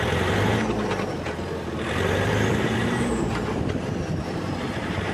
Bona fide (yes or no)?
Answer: no